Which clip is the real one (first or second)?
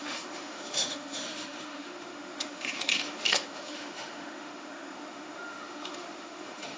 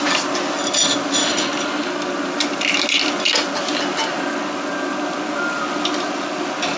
second